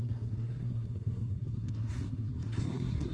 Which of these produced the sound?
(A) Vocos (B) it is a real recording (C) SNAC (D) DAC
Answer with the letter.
C